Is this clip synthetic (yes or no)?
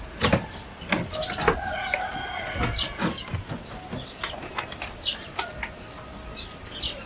no